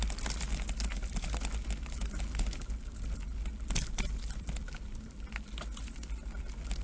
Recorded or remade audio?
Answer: recorded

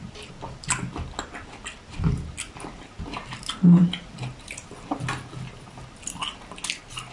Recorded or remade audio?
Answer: recorded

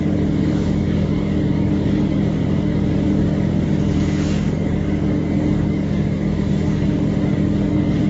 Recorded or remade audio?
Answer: remade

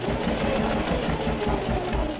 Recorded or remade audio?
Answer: recorded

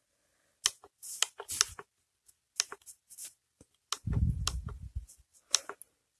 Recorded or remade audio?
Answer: recorded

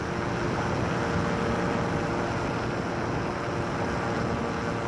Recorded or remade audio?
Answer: recorded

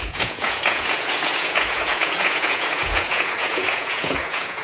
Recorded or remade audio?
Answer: remade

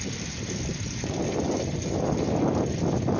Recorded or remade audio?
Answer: recorded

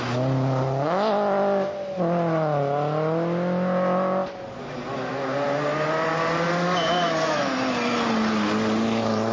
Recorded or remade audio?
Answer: recorded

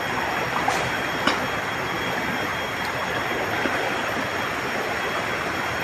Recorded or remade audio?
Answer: recorded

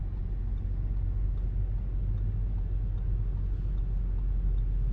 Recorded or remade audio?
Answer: recorded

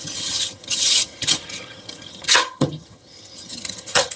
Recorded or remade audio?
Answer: remade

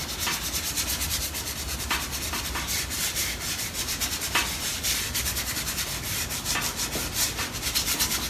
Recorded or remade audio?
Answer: recorded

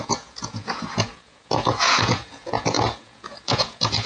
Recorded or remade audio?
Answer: remade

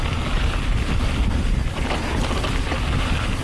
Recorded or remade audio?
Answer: recorded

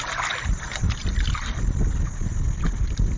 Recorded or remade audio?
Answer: recorded